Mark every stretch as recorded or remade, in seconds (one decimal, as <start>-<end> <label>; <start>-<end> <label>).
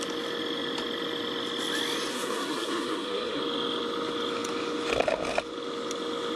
0.0-2.1 recorded; 2.1-3.4 remade; 3.4-6.4 recorded